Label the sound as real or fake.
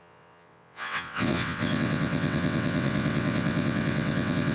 fake